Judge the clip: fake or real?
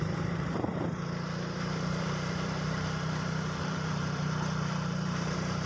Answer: fake